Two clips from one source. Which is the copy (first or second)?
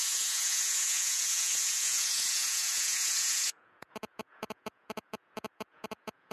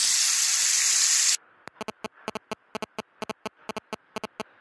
first